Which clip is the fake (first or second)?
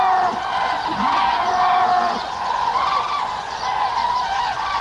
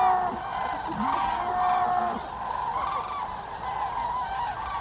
first